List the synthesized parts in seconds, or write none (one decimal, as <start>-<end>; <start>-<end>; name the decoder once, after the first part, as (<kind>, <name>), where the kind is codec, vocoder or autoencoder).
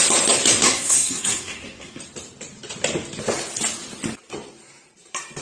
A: 0.6-2.0 (codec, SNAC)